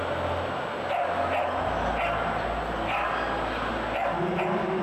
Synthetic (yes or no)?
no